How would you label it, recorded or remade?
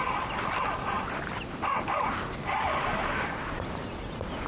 recorded